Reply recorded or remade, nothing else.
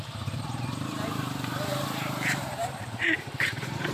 remade